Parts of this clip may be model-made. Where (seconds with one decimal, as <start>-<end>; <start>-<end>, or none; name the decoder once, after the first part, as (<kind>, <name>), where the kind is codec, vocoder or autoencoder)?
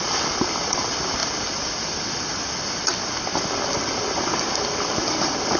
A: none